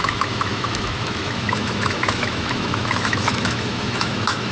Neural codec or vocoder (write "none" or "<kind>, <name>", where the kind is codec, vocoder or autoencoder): autoencoder, DAC-VAE